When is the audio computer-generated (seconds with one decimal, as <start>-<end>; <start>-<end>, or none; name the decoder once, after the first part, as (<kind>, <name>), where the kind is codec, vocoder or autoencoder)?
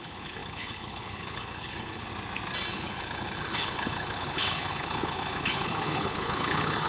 0.0-2.1 (codec, HILCodec); 2.7-6.9